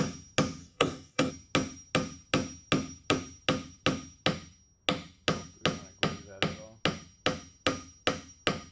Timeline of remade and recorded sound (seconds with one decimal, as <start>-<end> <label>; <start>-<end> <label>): 0.0-0.6 recorded; 0.6-1.3 remade; 1.3-8.7 recorded